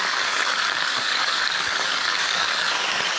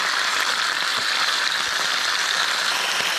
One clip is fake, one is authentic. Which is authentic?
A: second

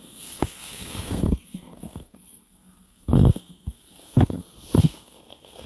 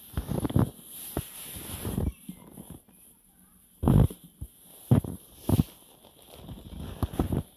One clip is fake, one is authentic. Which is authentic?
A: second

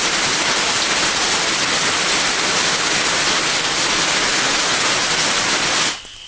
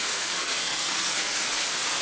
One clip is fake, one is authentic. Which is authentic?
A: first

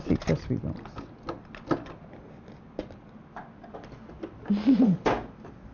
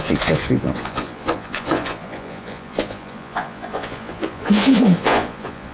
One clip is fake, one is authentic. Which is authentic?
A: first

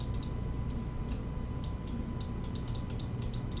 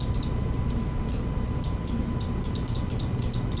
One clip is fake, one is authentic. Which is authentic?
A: first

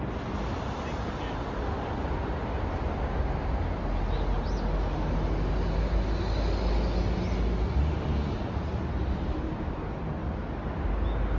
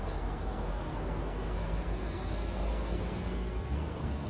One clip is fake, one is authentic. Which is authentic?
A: first